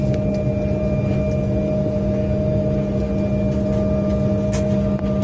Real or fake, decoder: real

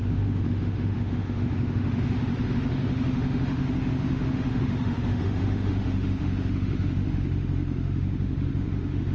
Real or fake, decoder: fake, autoencoder, DAC-VAE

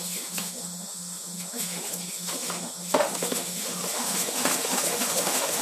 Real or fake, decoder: fake, autoencoder, DAC-VAE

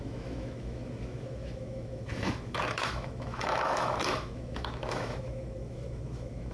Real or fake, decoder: fake, autoencoder, DAC-VAE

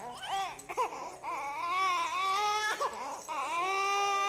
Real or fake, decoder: real